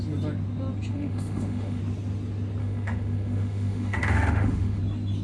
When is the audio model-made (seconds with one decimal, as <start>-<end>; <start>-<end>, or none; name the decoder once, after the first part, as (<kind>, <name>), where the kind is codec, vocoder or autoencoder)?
0.9-1.8 (autoencoder, DAC-VAE); 2.6-4.8

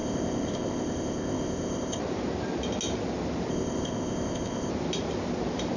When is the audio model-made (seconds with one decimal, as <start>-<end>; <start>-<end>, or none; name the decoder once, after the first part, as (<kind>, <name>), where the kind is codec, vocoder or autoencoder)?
0.0-2.0 (codec, ZipCodec); 3.5-4.7

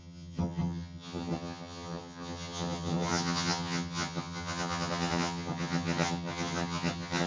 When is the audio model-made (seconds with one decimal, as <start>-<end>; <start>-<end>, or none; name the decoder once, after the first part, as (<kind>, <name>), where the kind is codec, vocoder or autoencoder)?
0.0-7.3 (vocoder, HiFi-GAN)